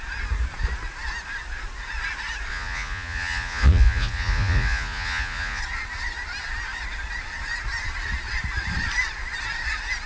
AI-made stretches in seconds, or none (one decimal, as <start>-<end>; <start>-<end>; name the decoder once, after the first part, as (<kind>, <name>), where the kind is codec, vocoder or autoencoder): 2.5-5.6 (vocoder, Vocos)